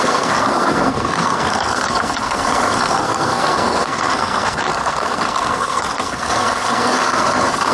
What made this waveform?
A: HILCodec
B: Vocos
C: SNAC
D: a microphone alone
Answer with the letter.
C